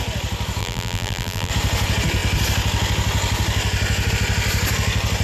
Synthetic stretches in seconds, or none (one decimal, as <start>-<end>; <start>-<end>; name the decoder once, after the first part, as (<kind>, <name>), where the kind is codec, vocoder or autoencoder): 0.6-1.5 (vocoder, BigVGAN v2)